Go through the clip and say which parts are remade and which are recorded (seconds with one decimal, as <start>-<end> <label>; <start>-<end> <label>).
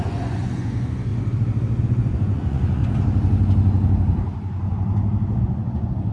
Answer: 0.0-1.1 remade; 1.1-1.8 recorded; 1.8-2.8 remade; 2.8-5.4 recorded; 5.4-6.1 remade